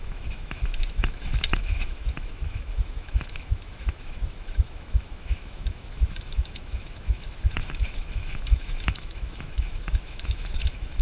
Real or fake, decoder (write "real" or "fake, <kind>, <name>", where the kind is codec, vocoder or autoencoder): fake, autoencoder, DAC-VAE